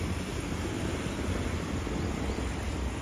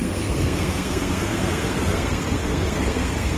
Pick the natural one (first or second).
first